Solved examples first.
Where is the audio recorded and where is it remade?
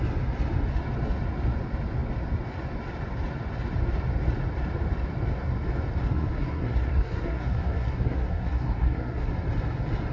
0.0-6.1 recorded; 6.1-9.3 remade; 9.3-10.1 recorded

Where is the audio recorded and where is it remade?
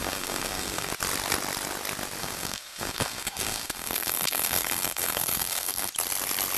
0.0-0.9 remade; 0.9-2.2 recorded; 2.2-5.9 remade; 5.9-6.6 recorded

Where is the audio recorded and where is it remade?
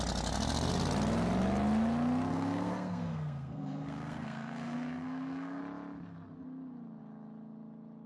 0.0-2.3 recorded; 2.3-5.6 remade; 5.6-8.1 recorded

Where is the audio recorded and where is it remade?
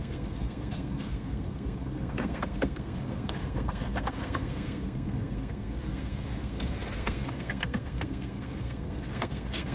0.0-9.7 remade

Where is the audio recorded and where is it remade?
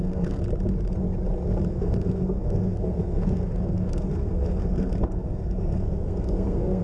0.0-0.4 remade; 0.4-1.7 recorded; 1.7-6.8 remade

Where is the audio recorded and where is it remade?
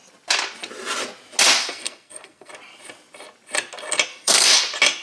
0.0-1.6 recorded; 1.6-2.5 remade; 2.5-4.1 recorded; 4.1-4.6 remade; 4.6-5.0 recorded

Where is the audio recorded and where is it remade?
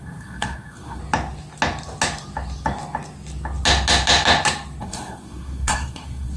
0.0-1.0 remade; 1.0-4.8 recorded; 4.8-6.4 remade